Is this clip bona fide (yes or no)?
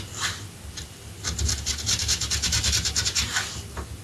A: yes